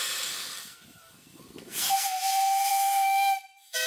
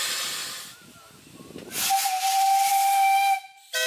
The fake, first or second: first